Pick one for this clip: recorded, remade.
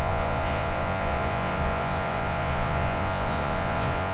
remade